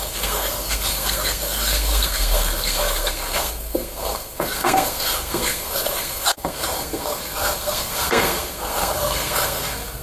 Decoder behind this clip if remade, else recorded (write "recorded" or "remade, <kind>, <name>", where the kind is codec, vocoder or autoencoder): remade, codec, SNAC